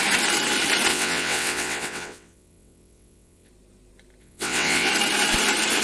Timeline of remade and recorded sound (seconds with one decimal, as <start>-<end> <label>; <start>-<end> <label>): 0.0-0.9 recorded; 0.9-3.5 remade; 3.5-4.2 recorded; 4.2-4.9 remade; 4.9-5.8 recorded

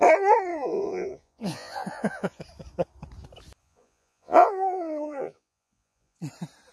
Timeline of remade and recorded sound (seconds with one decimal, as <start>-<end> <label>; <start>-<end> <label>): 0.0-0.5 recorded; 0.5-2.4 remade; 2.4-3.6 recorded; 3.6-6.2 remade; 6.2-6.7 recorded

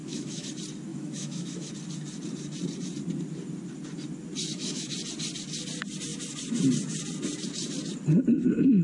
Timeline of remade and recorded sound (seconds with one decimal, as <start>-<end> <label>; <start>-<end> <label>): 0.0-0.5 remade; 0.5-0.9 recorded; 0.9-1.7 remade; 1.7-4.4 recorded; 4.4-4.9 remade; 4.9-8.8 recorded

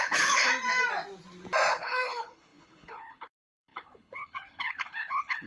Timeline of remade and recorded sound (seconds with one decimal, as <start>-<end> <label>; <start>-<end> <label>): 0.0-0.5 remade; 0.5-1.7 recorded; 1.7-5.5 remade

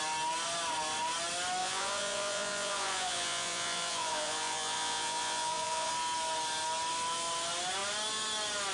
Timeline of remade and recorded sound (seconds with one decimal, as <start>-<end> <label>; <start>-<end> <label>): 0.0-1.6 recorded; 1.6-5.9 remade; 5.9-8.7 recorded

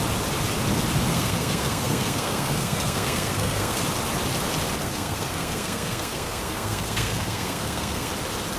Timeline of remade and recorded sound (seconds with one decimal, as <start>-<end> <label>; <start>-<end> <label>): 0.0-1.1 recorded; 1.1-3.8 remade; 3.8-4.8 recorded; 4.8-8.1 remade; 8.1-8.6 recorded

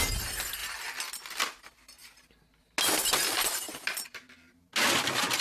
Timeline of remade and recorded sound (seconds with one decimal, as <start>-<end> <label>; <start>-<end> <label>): 0.0-5.4 recorded